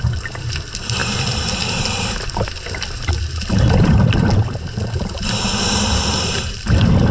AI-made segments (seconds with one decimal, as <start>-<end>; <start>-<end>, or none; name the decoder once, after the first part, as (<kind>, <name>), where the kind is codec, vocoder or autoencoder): 0.0-7.1 (vocoder, BigVGAN v2)